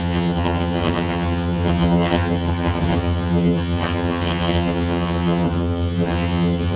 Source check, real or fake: fake